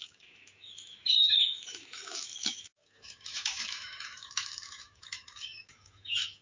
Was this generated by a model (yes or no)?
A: yes